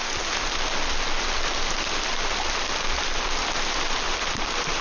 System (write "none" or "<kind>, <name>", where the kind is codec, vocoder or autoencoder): none